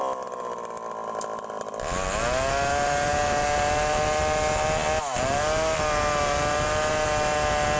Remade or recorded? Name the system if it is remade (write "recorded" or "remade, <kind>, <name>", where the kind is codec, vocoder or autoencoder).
recorded